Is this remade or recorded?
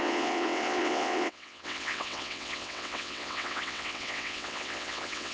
remade